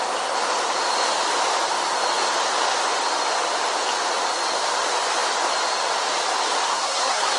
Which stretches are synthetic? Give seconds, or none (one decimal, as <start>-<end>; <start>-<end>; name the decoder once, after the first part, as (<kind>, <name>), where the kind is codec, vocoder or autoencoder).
6.7-7.4 (codec, SNAC)